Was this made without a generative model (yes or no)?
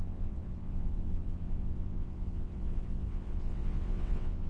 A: no